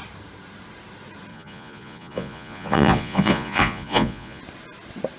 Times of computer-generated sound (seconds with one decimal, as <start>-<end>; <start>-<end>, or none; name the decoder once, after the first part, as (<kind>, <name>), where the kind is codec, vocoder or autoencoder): 1.3-4.4 (vocoder, Vocos)